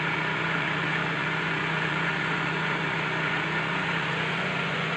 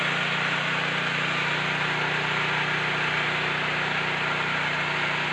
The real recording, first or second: second